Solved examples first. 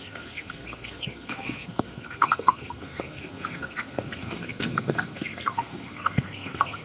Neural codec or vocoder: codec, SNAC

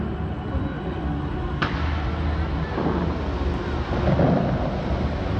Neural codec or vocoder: none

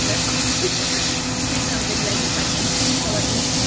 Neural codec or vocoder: none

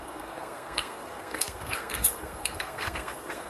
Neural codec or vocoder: codec, SNAC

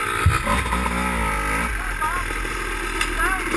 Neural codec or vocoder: none